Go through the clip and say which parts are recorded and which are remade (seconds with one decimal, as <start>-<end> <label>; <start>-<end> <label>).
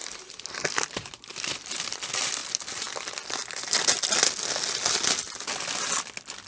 0.0-1.7 remade; 1.7-6.5 recorded